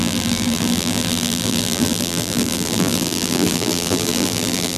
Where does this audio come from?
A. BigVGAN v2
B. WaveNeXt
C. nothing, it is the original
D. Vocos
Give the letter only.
A